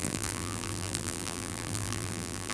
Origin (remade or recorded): remade